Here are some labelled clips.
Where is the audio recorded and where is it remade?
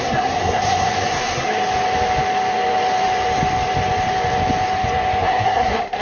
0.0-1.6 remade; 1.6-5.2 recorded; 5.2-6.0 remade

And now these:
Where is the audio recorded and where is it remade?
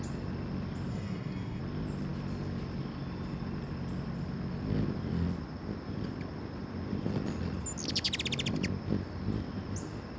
0.0-0.9 recorded; 0.9-1.6 remade; 1.6-10.2 recorded